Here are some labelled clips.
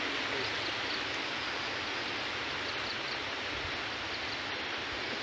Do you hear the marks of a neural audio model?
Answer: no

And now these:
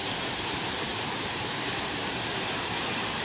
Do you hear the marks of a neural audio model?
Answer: yes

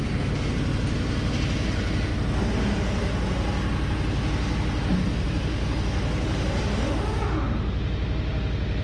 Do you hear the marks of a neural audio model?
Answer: no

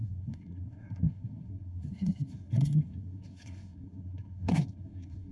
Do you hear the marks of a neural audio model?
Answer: yes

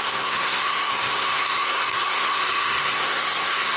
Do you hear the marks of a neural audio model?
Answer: yes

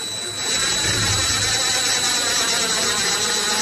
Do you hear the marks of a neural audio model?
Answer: no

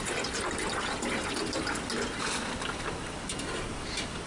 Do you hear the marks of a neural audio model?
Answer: no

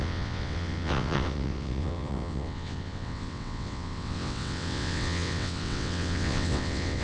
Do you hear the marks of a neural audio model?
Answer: yes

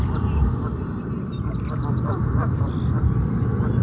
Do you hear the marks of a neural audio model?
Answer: no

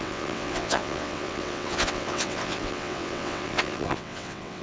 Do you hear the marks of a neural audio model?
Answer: yes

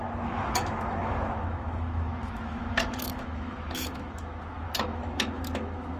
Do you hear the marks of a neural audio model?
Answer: yes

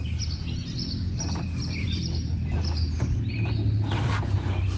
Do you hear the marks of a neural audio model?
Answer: no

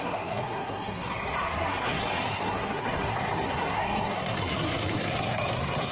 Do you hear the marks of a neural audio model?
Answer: yes